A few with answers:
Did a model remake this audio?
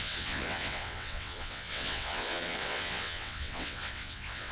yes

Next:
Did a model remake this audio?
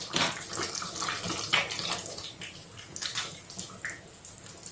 no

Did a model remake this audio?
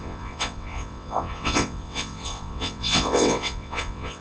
yes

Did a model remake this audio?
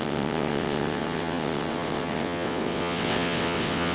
yes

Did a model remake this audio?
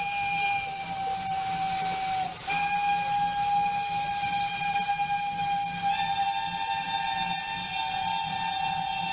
no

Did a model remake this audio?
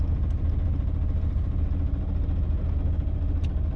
no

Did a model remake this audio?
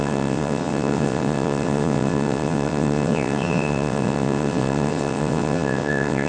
yes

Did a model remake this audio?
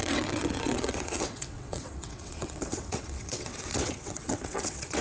yes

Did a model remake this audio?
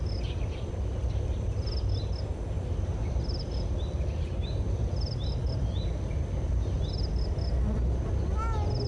no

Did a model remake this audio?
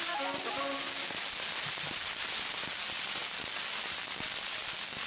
no